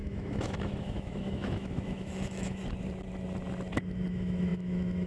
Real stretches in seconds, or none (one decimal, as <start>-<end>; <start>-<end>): 2.6-4.1